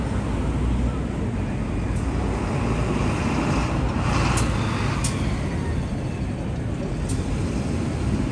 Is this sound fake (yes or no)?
no